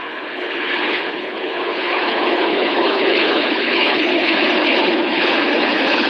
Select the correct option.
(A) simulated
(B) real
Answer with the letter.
A